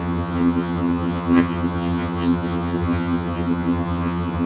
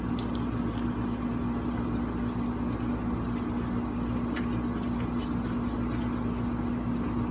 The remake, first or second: first